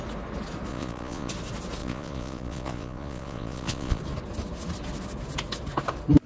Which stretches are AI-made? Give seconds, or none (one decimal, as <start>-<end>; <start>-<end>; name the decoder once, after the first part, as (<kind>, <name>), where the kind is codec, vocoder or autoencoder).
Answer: 0.7-1.3 (vocoder, Vocos); 1.8-4.0